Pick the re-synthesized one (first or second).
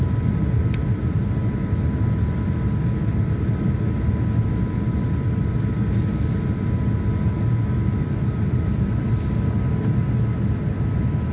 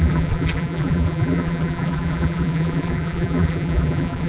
second